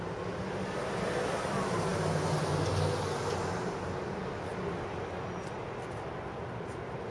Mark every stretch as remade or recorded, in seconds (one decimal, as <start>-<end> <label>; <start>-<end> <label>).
0.0-7.1 recorded